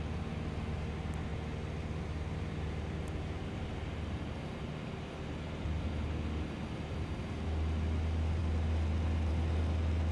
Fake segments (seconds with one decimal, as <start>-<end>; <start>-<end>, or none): none